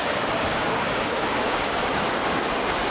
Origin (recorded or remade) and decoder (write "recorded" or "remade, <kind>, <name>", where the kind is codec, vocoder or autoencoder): remade, codec, DAC